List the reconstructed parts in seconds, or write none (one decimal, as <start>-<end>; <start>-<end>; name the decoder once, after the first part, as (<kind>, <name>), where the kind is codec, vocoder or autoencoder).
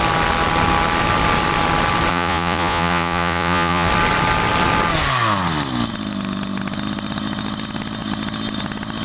2.1-3.9 (vocoder, Vocos)